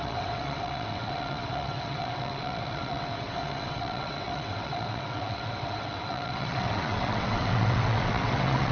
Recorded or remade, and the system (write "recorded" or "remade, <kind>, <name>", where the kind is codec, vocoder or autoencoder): remade, vocoder, WaveNeXt